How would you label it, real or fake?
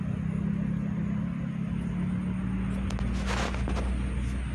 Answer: real